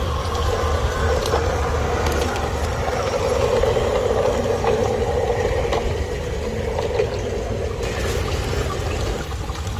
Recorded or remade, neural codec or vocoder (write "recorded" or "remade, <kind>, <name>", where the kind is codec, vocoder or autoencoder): recorded